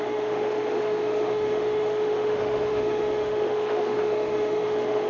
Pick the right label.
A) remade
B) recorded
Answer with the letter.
A